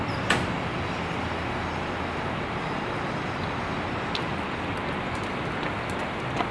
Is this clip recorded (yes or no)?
yes